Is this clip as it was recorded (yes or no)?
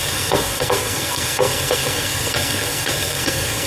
no